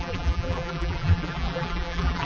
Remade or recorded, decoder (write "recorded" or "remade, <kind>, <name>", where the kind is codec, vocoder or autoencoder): remade, vocoder, BigVGAN v2